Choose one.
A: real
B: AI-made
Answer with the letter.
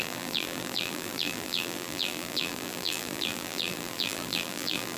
B